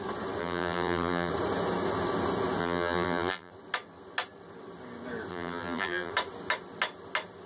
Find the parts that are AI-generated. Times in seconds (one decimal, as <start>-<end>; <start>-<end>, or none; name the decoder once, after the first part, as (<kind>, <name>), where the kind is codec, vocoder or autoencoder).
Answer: 0.4-1.3 (vocoder, BigVGAN v2); 2.6-3.5; 5.3-6.1